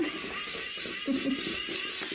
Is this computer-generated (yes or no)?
no